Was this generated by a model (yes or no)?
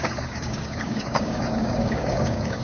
yes